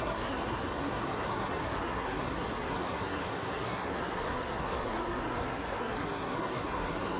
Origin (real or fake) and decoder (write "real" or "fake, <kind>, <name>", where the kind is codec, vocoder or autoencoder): fake, codec, SNAC